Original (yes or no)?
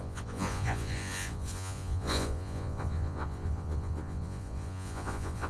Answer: no